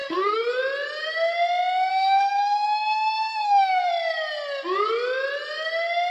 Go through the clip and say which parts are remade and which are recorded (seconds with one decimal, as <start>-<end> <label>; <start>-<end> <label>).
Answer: 0.0-0.6 remade; 0.6-1.9 recorded; 1.9-3.9 remade; 3.9-6.1 recorded